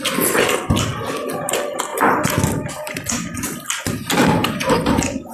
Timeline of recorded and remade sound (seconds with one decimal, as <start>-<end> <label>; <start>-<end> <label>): 0.0-5.3 recorded